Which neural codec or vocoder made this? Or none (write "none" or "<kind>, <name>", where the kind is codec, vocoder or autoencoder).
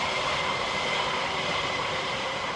vocoder, BigVGAN v2